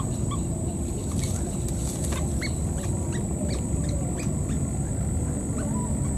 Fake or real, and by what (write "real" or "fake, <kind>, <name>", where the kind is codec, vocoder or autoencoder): real